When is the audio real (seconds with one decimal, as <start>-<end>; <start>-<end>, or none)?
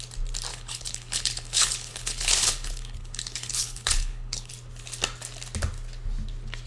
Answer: 0.0-0.5; 4.5-6.7